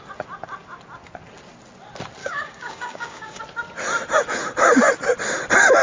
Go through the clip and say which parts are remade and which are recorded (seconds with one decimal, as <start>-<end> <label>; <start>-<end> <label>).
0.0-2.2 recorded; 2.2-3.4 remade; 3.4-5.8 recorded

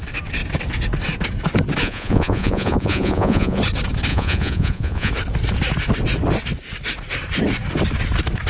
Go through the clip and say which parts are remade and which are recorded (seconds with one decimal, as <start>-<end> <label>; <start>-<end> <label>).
0.0-1.8 recorded; 1.8-3.6 remade; 3.6-4.1 recorded; 4.1-5.1 remade; 5.1-8.5 recorded

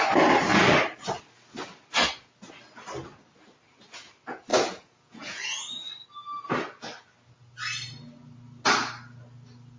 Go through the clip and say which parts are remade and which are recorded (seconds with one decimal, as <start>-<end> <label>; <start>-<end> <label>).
0.0-4.5 recorded; 4.5-5.9 remade; 5.9-9.8 recorded

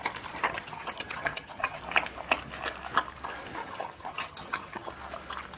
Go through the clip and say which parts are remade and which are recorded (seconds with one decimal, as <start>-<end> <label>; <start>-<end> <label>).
0.0-0.5 recorded; 0.5-1.8 remade; 1.8-3.6 recorded; 3.6-4.9 remade; 4.9-5.6 recorded

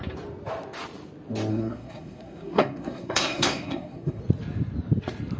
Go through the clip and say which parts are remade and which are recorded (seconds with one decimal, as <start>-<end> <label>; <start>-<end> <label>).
0.0-1.5 recorded; 1.5-4.2 remade; 4.2-5.4 recorded

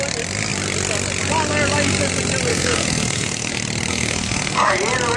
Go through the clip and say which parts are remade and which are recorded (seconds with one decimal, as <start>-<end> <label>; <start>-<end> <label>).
0.0-2.5 recorded; 2.5-3.5 remade; 3.5-3.9 recorded; 3.9-4.7 remade; 4.7-5.2 recorded